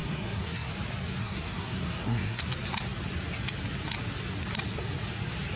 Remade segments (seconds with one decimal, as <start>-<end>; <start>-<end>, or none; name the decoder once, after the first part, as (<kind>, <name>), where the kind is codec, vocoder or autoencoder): 0.0-0.7 (codec, SNAC); 1.2-2.4